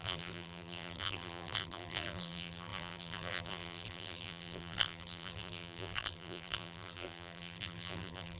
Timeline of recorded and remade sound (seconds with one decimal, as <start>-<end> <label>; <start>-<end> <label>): 0.0-8.4 remade